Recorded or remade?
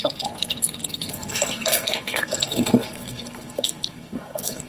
remade